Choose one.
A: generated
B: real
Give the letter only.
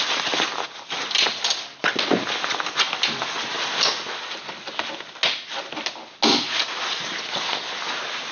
B